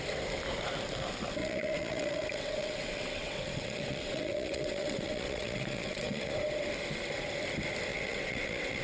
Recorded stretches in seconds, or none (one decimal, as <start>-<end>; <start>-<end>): 0.0-1.4; 6.3-7.9